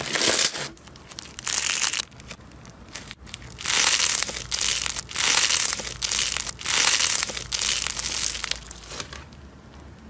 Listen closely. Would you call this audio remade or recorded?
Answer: recorded